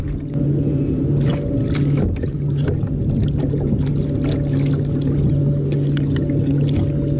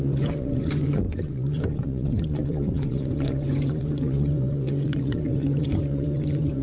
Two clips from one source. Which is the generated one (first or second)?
second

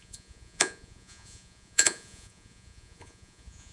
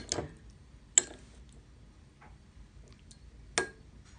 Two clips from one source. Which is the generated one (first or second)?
first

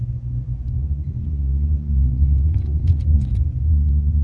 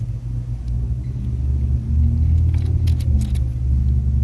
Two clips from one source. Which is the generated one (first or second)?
first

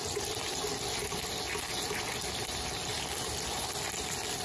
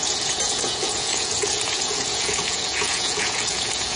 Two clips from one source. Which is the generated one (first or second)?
second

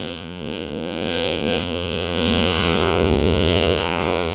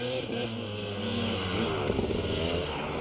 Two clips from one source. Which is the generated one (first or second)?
first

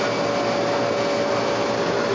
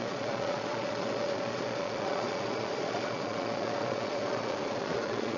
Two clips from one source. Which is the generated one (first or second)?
second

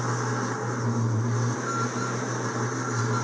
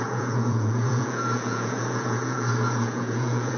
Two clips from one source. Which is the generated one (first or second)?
second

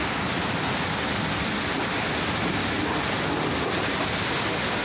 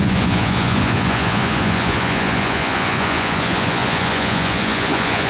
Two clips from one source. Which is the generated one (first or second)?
second